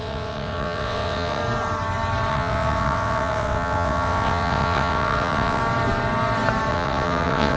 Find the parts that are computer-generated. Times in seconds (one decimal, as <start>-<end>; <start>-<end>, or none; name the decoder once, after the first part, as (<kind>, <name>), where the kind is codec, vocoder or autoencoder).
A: 0.0-1.4 (vocoder, WaveNeXt); 2.3-5.6; 6.7-7.6